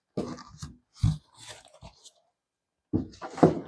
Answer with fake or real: real